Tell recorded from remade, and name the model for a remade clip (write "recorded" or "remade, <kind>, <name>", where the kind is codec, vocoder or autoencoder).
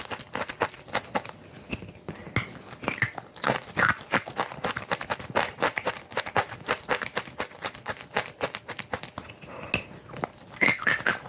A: recorded